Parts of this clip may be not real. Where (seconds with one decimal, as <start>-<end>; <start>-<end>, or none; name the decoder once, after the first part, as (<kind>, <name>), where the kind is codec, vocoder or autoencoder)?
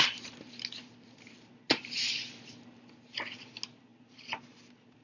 none